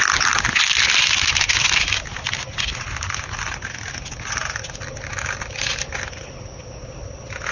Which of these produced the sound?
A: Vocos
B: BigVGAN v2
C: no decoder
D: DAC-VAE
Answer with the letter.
C